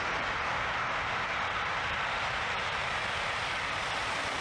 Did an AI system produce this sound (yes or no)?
yes